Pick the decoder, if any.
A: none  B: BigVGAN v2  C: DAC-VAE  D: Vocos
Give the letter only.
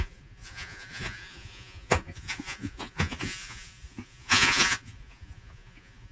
D